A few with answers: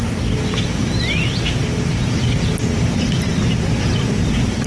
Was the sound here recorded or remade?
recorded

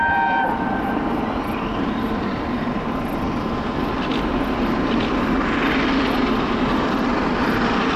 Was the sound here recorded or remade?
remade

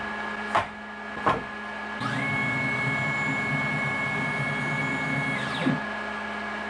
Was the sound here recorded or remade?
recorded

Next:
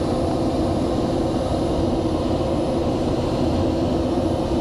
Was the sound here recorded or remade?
recorded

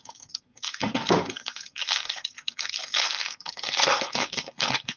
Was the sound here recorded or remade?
remade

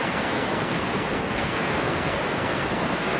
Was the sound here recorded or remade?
remade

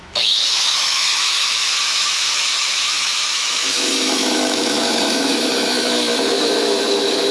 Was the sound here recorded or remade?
remade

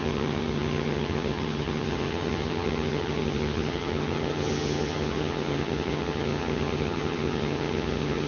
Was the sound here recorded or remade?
remade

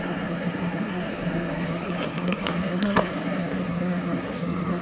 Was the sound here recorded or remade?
remade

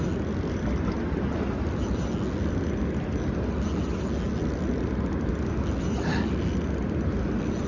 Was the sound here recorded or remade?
recorded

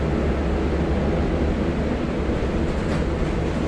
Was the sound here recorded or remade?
recorded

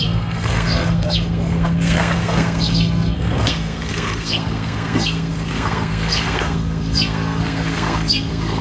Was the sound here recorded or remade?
remade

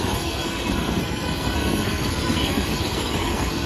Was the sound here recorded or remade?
remade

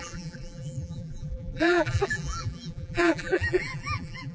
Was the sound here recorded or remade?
remade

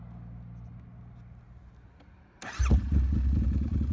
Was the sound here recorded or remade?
recorded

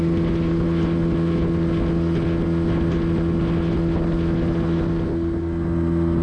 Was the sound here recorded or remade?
recorded